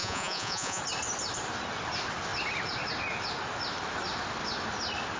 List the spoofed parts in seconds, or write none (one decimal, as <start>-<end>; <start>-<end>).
0.0-0.8